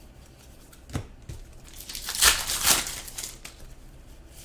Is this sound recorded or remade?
recorded